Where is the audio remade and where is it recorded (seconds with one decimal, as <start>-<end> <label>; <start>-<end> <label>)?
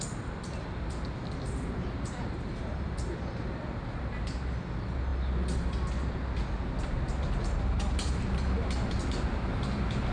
0.0-10.1 recorded